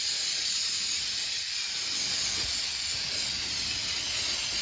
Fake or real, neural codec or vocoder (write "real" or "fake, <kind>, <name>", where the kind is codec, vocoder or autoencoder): real